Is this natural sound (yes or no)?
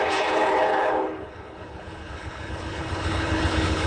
no